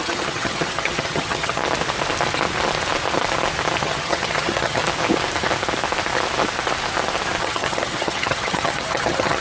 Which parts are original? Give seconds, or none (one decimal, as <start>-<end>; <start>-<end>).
1.6-3.8; 4.8-7.4